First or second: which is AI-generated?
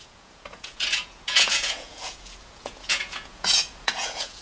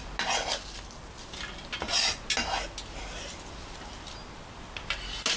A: first